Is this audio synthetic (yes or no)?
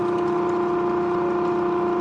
no